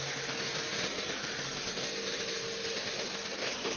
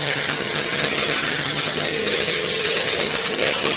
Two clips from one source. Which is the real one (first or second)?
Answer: first